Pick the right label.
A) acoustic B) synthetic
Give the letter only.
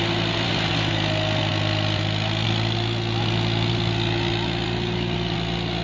A